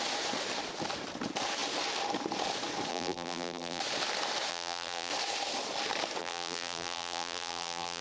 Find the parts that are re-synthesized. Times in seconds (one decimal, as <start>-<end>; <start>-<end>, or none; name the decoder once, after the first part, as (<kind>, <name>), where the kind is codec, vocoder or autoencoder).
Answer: 2.9-3.8 (vocoder, BigVGAN v2); 4.5-5.1; 6.2-8.0